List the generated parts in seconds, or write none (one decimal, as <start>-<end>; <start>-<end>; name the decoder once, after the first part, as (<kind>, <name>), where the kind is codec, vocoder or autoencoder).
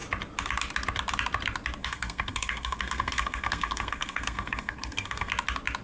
1.8-5.3 (codec, SNAC)